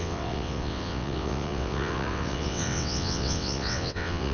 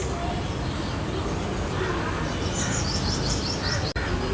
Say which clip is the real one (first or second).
second